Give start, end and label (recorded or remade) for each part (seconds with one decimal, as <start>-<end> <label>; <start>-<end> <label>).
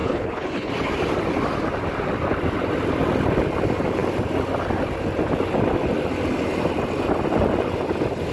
0.0-0.7 remade; 0.7-8.3 recorded